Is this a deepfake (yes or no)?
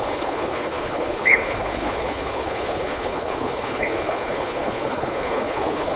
yes